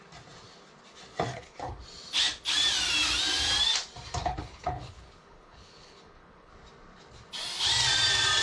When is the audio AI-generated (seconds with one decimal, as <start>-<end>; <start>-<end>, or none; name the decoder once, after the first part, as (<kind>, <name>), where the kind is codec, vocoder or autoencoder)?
1.3-1.8 (codec, HILCodec); 4.2-6.5